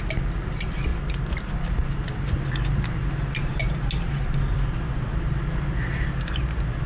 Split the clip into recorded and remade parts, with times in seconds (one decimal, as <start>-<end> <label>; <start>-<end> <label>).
0.0-6.9 recorded